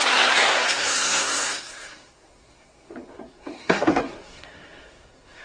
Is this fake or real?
fake